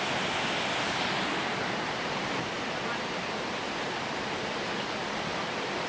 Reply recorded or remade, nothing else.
recorded